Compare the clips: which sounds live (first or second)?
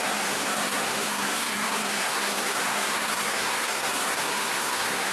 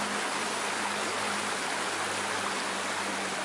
second